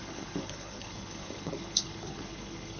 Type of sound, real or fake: fake